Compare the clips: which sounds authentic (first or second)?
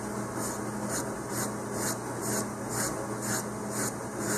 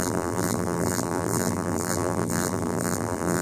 first